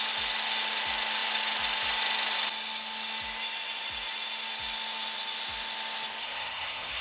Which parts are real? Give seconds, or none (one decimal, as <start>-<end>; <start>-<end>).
0.0-6.2